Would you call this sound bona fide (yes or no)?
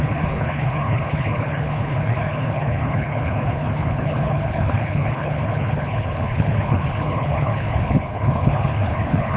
no